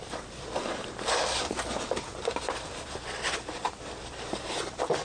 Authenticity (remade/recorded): remade